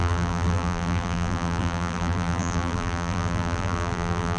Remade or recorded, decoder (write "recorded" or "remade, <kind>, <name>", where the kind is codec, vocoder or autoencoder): remade, vocoder, BigVGAN v2